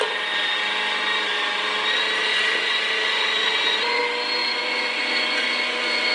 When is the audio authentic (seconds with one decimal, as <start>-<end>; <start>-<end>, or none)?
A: 0.0-2.3; 4.0-4.4